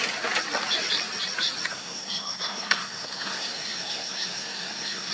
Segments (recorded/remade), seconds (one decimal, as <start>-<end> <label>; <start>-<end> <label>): 0.0-1.7 recorded; 1.7-5.1 remade